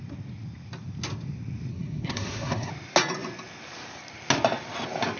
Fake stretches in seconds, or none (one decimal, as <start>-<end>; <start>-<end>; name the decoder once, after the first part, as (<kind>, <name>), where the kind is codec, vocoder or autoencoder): 1.7-2.7 (codec, SNAC)